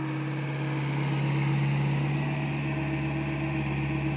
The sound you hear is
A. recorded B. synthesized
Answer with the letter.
A